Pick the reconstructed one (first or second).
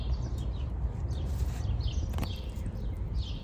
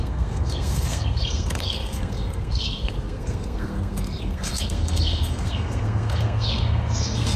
second